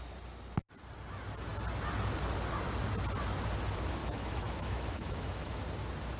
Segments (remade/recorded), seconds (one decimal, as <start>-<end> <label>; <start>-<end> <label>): 0.0-4.0 recorded; 4.0-5.6 remade; 5.6-6.2 recorded